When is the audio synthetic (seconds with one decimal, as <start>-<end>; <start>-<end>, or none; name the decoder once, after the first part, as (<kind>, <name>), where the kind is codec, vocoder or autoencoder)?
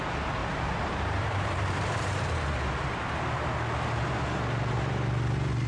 0.4-2.5 (vocoder, BigVGAN v2)